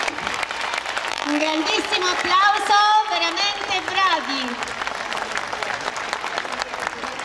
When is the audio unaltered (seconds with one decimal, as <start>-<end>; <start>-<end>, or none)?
0.0-1.1; 1.6-7.2